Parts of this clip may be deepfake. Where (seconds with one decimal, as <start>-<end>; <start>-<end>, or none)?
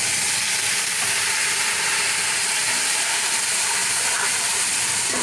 1.8-3.8; 4.4-5.2